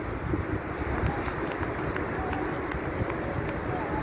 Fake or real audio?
real